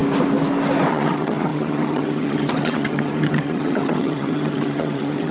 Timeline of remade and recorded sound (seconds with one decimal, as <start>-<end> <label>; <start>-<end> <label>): 0.0-0.9 recorded; 0.9-5.3 remade